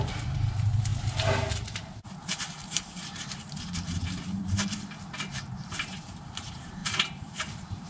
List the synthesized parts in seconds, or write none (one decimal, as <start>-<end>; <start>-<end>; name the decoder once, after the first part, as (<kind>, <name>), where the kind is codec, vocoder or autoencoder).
0.0-7.9 (vocoder, BigVGAN v2)